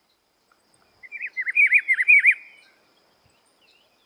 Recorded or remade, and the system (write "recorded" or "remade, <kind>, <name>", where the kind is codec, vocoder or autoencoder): remade, vocoder, BigVGAN v2